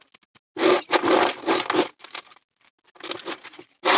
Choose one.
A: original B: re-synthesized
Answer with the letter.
A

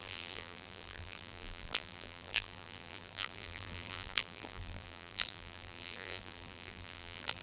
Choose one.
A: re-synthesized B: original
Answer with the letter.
A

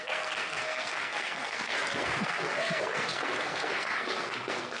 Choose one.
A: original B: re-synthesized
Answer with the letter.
B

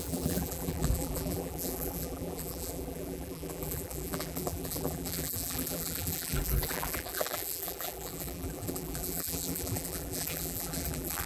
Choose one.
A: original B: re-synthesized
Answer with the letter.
B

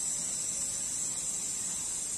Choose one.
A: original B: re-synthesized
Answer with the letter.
A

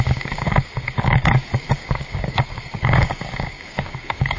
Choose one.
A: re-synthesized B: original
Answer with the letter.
A